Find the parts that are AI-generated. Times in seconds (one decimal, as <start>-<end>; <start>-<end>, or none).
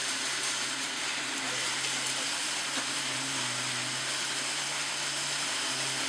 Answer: 0.0-3.4